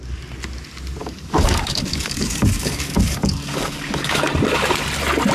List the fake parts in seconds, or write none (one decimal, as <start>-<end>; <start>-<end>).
1.0-4.2